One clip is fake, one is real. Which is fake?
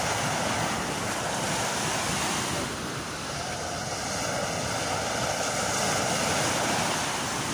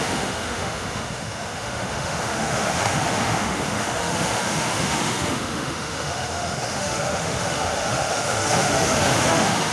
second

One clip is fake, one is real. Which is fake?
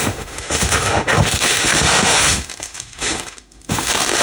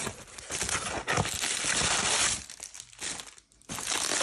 first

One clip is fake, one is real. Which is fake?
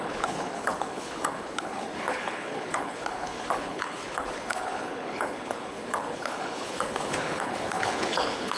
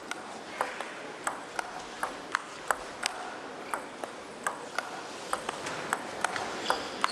first